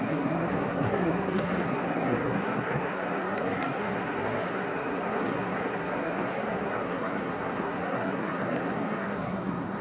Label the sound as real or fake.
fake